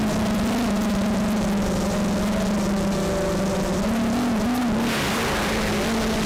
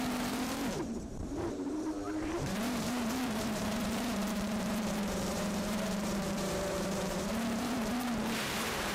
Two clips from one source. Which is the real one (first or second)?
first